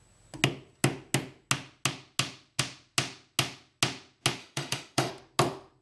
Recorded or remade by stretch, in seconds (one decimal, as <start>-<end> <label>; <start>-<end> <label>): 0.0-4.4 recorded; 4.4-5.1 remade; 5.1-5.8 recorded